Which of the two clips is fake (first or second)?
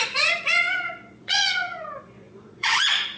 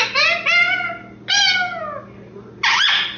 first